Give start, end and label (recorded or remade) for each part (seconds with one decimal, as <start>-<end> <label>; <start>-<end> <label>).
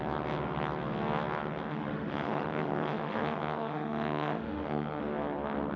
0.0-1.7 recorded; 1.7-5.0 remade; 5.0-5.8 recorded